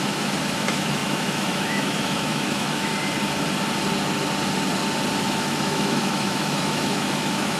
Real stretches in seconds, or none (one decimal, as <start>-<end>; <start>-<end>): 2.9-5.2